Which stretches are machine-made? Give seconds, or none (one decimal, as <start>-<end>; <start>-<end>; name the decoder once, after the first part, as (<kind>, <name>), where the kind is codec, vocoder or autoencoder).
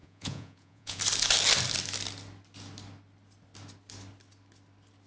0.0-1.0 (vocoder, Vocos)